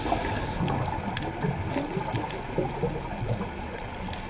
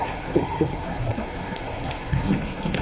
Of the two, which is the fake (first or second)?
second